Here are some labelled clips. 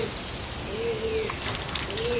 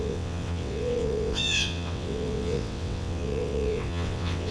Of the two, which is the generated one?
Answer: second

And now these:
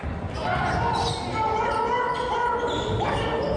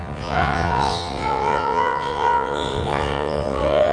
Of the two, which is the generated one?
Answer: second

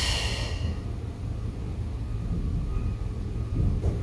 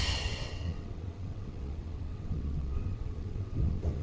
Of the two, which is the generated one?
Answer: second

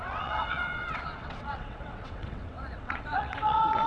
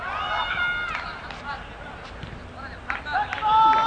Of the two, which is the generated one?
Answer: first